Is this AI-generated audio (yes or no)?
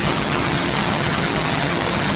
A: yes